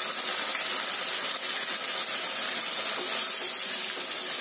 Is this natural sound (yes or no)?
yes